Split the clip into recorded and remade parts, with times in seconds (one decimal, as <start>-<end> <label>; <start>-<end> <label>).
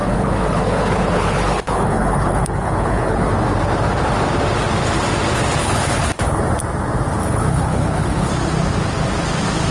0.0-3.3 remade; 3.3-5.6 recorded; 5.6-6.4 remade; 6.4-7.2 recorded; 7.2-8.3 remade; 8.3-9.7 recorded